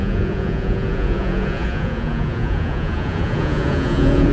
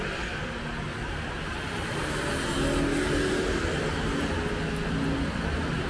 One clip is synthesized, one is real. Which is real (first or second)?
second